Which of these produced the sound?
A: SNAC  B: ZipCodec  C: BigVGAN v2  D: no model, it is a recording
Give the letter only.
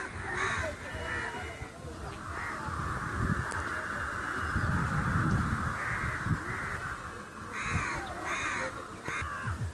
D